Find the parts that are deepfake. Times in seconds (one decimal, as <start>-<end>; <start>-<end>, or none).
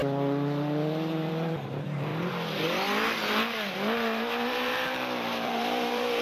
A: 1.1-2.1; 3.7-6.2